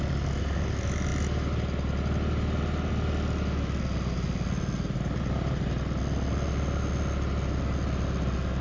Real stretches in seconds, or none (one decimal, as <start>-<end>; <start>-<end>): 0.0-8.6